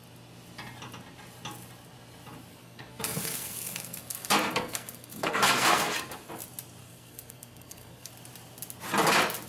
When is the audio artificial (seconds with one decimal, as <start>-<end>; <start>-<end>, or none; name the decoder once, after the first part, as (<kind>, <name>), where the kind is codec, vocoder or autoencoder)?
2.5-6.3 (codec, SNAC); 6.8-8.1